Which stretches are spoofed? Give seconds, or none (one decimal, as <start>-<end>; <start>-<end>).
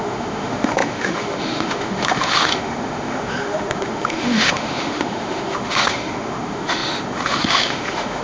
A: 0.0-8.2